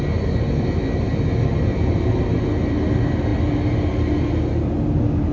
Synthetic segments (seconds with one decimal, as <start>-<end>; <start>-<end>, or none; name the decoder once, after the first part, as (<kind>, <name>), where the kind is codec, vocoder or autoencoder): none